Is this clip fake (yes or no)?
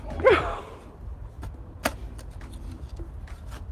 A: no